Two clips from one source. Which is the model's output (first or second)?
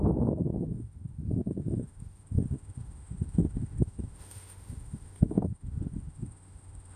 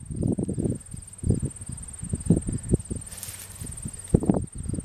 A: first